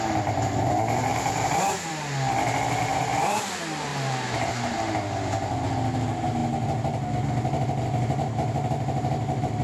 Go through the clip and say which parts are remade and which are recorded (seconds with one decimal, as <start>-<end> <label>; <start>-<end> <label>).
0.0-1.1 recorded; 1.1-1.9 remade; 1.9-2.9 recorded; 2.9-3.4 remade; 3.4-3.9 recorded; 3.9-4.9 remade; 4.9-9.6 recorded